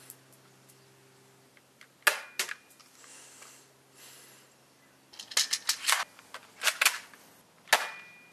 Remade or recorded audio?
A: recorded